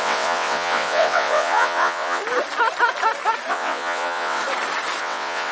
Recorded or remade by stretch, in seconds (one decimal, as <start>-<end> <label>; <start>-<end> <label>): 0.0-2.2 remade; 2.2-3.5 recorded; 3.5-4.4 remade; 4.4-5.0 recorded; 5.0-5.5 remade